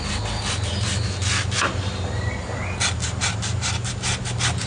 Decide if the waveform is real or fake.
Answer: real